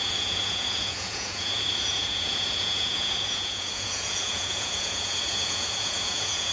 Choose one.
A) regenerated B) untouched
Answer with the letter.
A